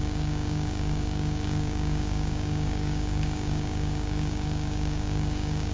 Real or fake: fake